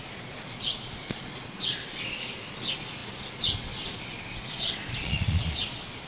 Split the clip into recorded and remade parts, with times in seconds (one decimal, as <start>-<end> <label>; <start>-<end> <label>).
0.0-6.1 remade